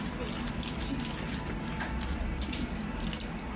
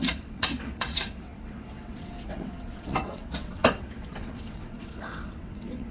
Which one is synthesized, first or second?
second